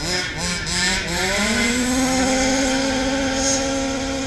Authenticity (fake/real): real